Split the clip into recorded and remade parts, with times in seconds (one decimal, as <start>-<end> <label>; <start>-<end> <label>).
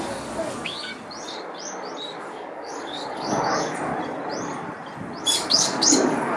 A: 0.0-0.9 remade; 0.9-2.2 recorded; 2.2-3.9 remade; 3.9-5.2 recorded; 5.2-6.4 remade